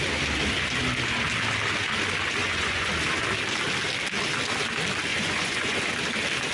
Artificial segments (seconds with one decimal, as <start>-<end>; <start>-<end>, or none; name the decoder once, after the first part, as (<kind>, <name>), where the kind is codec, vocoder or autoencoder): 2.4-2.9 (vocoder, Vocos); 5.1-5.8